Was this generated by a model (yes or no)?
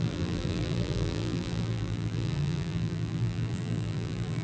yes